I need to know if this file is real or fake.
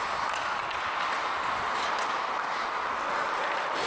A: real